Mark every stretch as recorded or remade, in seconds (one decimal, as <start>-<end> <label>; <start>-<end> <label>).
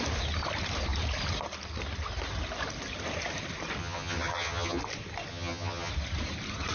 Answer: 0.0-3.8 recorded; 3.8-4.8 remade; 4.8-5.3 recorded; 5.3-5.9 remade; 5.9-6.7 recorded